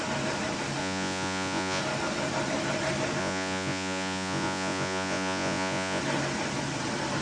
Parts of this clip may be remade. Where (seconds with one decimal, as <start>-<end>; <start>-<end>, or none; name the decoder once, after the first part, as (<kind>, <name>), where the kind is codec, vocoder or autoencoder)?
0.8-1.8 (vocoder, Vocos); 3.2-6.0